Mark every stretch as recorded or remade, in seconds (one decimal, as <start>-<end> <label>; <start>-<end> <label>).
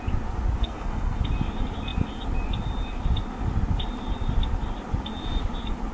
0.0-0.6 recorded; 0.6-1.2 remade; 1.2-5.9 recorded